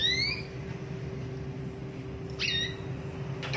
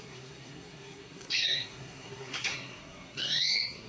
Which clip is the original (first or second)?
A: first